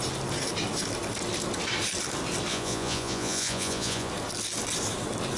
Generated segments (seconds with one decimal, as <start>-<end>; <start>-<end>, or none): 2.5-4.1